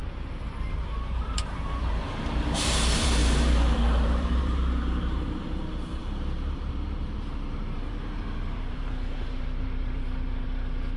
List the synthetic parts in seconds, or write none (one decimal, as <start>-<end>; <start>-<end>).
1.1-11.0